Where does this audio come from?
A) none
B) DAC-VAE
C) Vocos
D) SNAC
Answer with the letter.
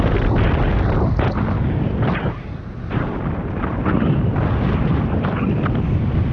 A